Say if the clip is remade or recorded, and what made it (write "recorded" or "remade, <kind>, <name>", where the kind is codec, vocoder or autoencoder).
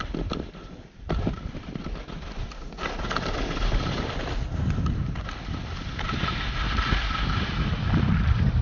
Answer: recorded